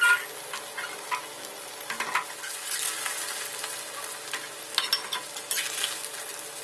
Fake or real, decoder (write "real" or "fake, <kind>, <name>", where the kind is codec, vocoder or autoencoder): real